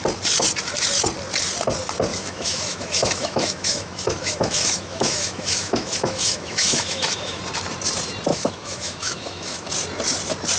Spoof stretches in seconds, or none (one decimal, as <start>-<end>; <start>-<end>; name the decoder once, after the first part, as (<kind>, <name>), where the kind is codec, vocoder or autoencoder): 2.1-7.4 (autoencoder, DAC-VAE); 8.3-9.7